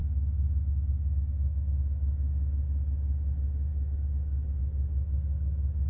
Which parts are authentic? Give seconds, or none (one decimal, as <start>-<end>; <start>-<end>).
0.0-5.9